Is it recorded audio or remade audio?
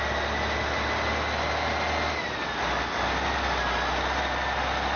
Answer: recorded